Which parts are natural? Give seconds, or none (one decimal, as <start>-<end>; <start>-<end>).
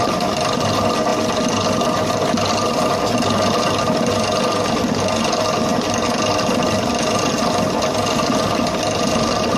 0.0-9.6